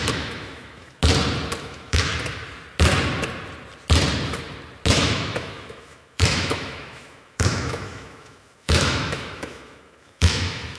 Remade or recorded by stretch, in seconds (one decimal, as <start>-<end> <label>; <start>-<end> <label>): 0.0-1.0 remade; 1.0-1.6 recorded; 1.6-2.1 remade; 2.1-4.9 recorded; 4.9-10.8 remade